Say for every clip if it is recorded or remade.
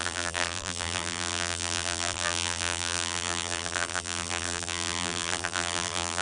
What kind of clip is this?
remade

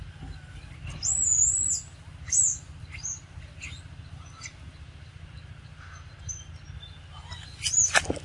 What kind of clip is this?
recorded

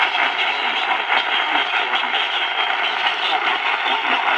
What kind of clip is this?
remade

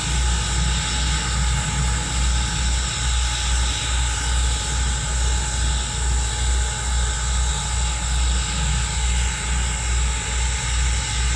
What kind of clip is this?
recorded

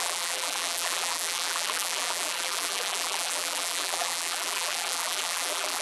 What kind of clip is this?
remade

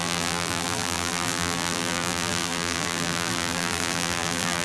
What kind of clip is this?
remade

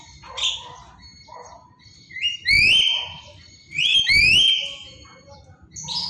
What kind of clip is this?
recorded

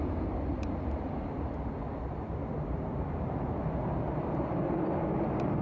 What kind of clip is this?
recorded